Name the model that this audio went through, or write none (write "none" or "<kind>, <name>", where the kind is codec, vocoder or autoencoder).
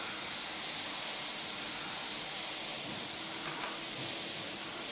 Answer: none